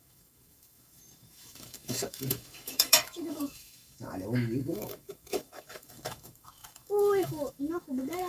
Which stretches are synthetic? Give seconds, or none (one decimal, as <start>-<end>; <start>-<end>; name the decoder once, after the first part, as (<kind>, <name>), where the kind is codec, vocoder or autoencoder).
0.0-8.3 (autoencoder, DAC-VAE)